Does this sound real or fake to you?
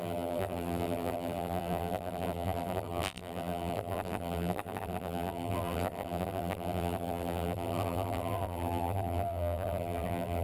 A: fake